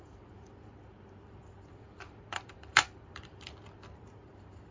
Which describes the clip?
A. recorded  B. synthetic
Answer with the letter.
B